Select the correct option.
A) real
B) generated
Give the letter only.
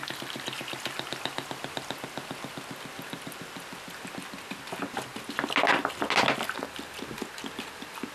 A